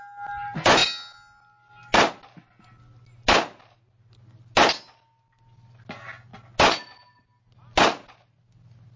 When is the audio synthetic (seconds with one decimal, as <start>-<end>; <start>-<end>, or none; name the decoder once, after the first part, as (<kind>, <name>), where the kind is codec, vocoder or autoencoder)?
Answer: none